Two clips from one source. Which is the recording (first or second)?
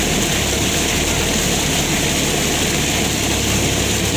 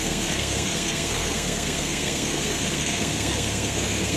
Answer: first